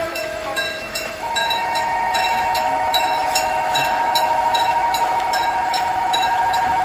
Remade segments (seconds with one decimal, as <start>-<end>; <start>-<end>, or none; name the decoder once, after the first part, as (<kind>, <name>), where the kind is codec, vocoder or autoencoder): 0.0-6.8 (autoencoder, DAC-VAE)